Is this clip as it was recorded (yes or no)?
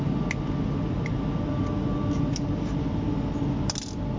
yes